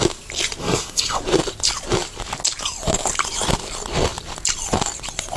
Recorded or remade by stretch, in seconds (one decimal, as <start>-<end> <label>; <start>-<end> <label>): 0.0-0.6 recorded; 0.6-1.2 remade; 1.2-5.4 recorded